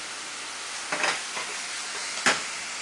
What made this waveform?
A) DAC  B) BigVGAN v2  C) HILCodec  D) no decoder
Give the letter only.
D